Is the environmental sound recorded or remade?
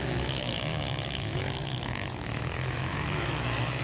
remade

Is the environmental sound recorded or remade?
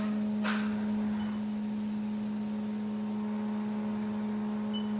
recorded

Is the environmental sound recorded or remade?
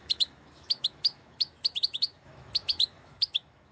remade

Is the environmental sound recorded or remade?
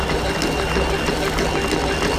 recorded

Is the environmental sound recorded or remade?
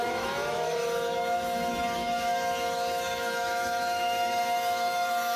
remade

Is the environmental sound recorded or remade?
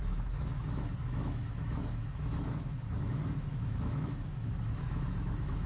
remade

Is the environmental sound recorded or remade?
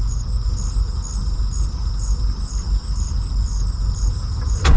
recorded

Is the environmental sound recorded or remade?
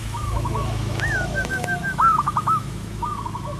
remade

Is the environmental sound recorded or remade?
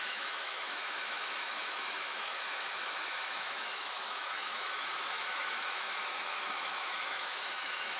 remade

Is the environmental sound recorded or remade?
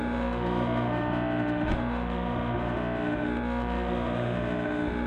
remade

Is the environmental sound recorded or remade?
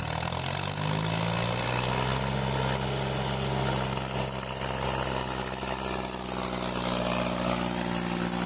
recorded